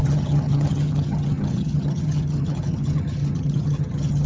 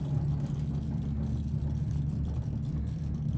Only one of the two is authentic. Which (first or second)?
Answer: second